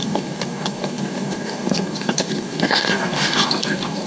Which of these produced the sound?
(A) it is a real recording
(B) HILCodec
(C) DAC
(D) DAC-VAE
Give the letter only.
C